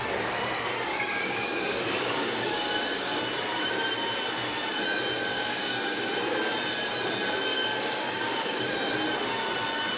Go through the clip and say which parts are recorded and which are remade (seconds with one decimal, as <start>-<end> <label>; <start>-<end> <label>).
0.0-0.9 recorded; 0.9-3.2 remade; 3.2-5.3 recorded; 5.3-6.1 remade; 6.1-7.5 recorded; 7.5-8.7 remade; 8.7-10.0 recorded